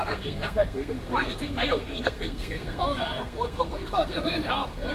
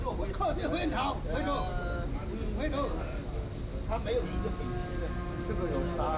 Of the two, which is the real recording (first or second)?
second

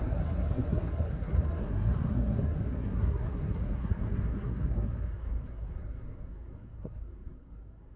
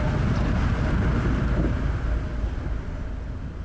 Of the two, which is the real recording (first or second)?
second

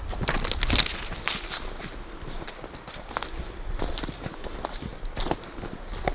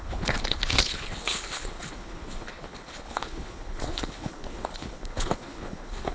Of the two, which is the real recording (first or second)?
first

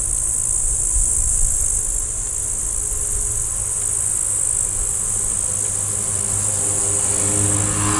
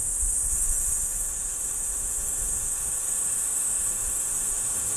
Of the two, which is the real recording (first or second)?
first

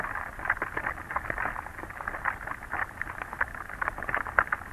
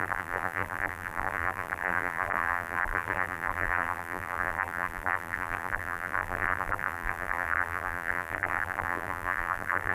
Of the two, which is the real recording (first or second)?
first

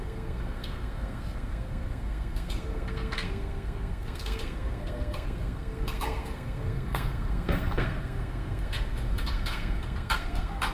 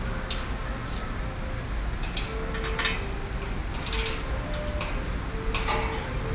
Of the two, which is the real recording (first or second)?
second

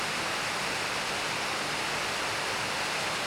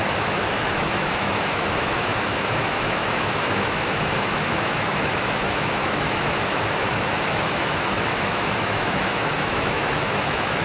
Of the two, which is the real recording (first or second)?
first